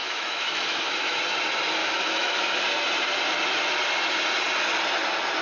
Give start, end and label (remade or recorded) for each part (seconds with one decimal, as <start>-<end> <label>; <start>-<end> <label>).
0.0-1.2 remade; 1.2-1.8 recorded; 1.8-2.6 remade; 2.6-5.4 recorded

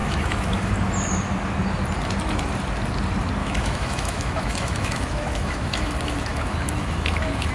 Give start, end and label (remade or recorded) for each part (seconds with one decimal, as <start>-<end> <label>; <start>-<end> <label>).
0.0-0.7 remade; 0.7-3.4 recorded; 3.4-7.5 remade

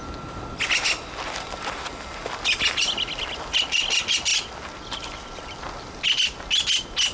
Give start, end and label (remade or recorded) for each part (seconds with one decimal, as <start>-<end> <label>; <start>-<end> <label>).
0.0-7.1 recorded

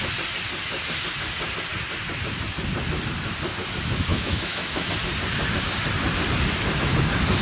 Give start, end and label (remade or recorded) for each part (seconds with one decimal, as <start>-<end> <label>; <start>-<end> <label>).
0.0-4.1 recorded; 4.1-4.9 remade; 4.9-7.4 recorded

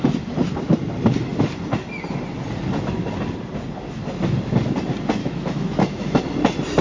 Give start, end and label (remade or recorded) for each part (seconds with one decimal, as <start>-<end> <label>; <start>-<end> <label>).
0.0-5.2 recorded; 5.2-6.2 remade; 6.2-6.8 recorded

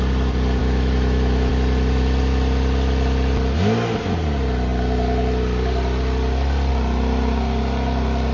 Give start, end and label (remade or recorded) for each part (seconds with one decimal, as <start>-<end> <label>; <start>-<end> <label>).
0.0-0.6 recorded; 0.6-1.5 remade; 1.5-8.3 recorded

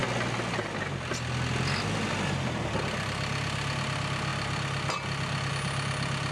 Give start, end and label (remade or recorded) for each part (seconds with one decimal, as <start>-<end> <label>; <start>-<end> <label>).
0.0-6.3 recorded